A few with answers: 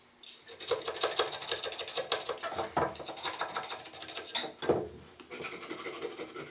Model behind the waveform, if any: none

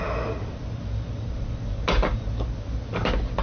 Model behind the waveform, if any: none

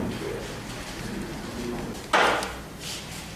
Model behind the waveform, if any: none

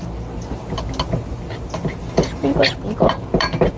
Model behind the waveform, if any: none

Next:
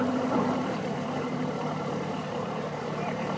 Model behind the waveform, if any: vocoder, BigVGAN v2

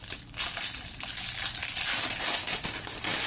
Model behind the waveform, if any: none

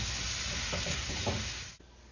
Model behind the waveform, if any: none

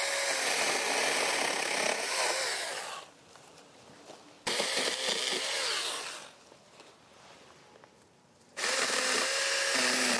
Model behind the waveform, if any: none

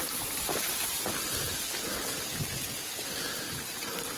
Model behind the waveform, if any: none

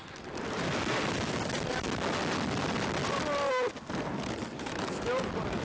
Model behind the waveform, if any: none